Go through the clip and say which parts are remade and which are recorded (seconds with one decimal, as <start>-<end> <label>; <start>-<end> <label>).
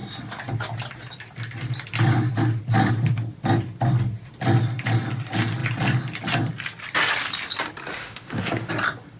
0.0-7.9 recorded; 7.9-8.7 remade; 8.7-9.2 recorded